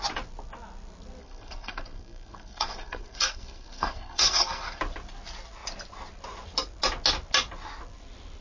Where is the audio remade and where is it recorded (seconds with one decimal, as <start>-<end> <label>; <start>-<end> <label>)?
0.0-1.2 recorded; 1.2-4.8 remade; 4.8-8.4 recorded